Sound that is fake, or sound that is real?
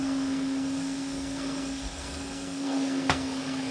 fake